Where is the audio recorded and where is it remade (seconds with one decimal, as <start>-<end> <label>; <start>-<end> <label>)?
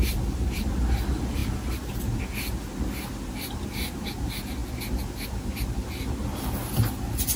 0.0-7.4 recorded